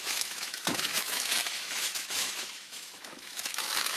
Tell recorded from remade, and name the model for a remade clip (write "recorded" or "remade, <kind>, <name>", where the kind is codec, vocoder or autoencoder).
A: remade, autoencoder, DAC-VAE